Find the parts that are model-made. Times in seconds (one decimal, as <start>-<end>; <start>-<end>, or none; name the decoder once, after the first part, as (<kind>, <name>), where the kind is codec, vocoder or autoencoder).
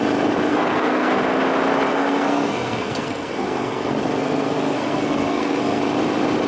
0.5-1.2 (codec, SNAC); 1.9-5.8